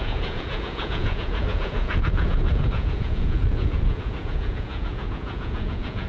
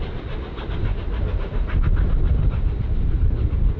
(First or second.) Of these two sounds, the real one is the second